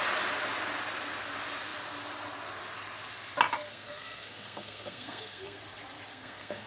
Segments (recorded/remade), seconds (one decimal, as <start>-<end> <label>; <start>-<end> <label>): 0.0-3.7 recorded; 3.7-5.6 remade; 5.6-6.1 recorded; 6.1-6.7 remade

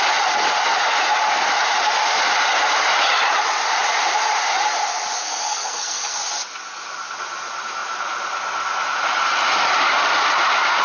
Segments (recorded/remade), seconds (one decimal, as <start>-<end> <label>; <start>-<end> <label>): 0.0-5.2 recorded; 5.2-6.2 remade; 6.2-10.8 recorded

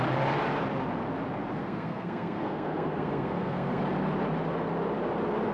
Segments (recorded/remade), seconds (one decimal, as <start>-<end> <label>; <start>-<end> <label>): 0.0-1.6 recorded; 1.6-3.8 remade; 3.8-5.5 recorded

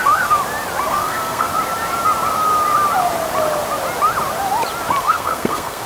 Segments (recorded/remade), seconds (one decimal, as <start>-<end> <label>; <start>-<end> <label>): 0.0-0.4 remade; 0.4-0.9 recorded; 0.9-1.5 remade; 1.5-5.0 recorded; 5.0-5.9 remade

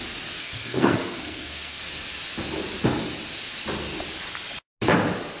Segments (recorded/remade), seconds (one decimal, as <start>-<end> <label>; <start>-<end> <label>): 0.0-0.4 recorded; 0.4-1.8 remade; 1.8-5.4 recorded

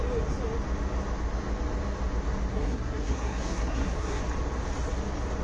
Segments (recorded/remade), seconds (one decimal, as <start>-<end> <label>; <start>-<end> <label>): 0.0-2.5 recorded; 2.5-4.2 remade; 4.2-5.4 recorded

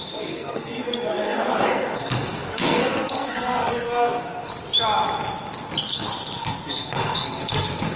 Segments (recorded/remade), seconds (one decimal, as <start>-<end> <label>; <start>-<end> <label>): 0.0-4.5 remade; 4.5-5.8 recorded; 5.8-8.0 remade

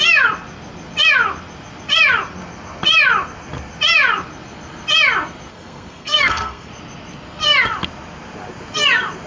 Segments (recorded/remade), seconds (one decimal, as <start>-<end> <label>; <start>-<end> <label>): 0.0-5.5 recorded; 5.5-6.7 remade; 6.7-9.3 recorded